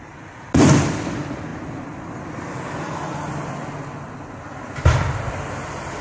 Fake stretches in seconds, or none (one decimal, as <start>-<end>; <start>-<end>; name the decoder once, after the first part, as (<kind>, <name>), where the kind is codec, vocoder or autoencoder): none